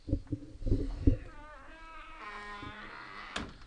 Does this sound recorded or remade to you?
recorded